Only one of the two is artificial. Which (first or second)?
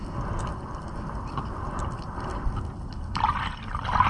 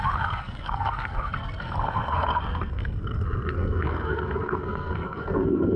second